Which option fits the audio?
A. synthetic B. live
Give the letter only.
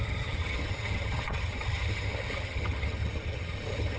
A